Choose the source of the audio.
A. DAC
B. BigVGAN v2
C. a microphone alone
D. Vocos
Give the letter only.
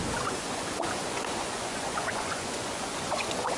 D